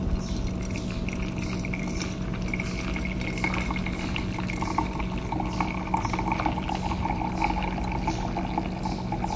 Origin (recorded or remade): recorded